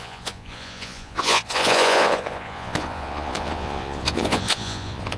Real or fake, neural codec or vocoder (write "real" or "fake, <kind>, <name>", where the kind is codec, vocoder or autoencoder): fake, vocoder, Vocos